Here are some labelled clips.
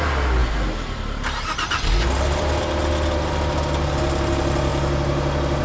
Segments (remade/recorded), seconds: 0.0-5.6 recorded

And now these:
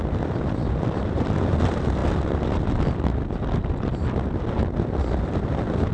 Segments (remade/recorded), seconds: 0.0-5.9 recorded

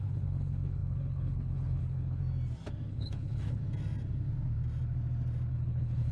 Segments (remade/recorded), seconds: 0.0-2.2 remade; 2.2-2.9 recorded; 2.9-3.6 remade; 3.6-5.5 recorded; 5.5-6.1 remade

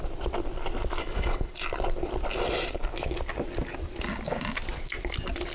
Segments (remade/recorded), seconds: 0.0-1.0 recorded; 1.0-1.5 remade; 1.5-5.5 recorded

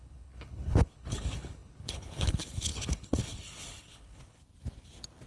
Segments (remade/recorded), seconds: 0.0-4.4 remade; 4.4-5.3 recorded

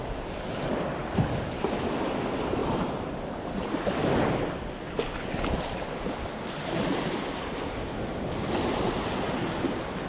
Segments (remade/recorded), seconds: 0.0-10.1 recorded

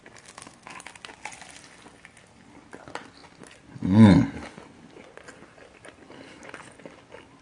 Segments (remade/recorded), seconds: 0.0-7.4 recorded